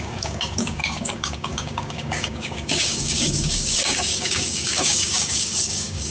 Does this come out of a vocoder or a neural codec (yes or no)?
yes